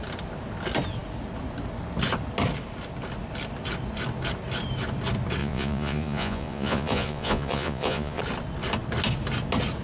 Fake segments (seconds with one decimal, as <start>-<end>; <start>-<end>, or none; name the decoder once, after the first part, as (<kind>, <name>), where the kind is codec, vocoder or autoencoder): 5.4-8.2 (vocoder, Vocos)